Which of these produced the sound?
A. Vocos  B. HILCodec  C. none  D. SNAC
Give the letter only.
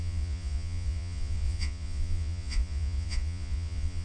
A